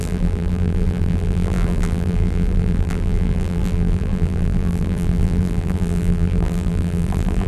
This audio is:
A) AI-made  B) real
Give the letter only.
A